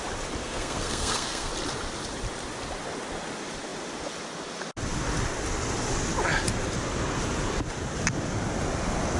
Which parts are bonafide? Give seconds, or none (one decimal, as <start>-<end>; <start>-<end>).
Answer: 0.0-0.4; 1.5-9.2